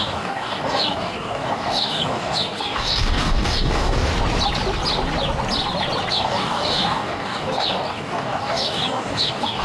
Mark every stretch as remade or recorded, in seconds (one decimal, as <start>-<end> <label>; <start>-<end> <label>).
0.0-4.1 remade; 4.1-6.1 recorded; 6.1-9.6 remade